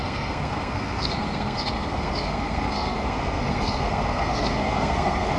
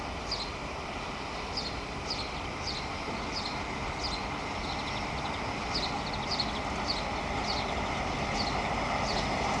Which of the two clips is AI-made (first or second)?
first